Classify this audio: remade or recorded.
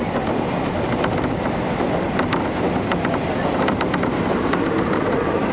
remade